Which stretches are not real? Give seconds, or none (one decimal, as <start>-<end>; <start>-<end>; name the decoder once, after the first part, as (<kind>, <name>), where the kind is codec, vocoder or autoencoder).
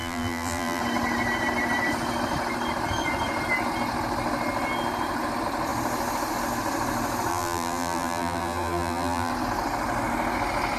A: 0.0-0.8 (vocoder, BigVGAN v2); 7.3-9.3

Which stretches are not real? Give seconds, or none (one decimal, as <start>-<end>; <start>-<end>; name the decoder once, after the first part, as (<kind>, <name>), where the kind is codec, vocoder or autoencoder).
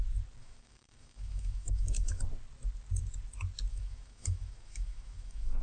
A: 0.4-2.2 (autoencoder, DAC-VAE); 3.7-5.6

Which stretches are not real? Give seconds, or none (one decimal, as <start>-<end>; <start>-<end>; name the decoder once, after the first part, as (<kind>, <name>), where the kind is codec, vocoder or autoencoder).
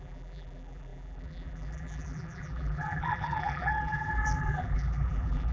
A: 0.0-5.5 (vocoder, BigVGAN v2)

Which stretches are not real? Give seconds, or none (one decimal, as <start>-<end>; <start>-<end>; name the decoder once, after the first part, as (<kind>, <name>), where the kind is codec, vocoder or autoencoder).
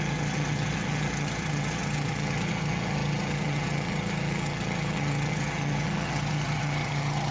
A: 0.0-7.3 (vocoder, HiFi-GAN)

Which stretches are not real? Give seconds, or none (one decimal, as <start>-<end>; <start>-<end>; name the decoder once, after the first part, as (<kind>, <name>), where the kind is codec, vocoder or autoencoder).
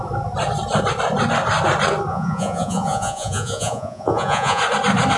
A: 2.1-4.6 (vocoder, Vocos)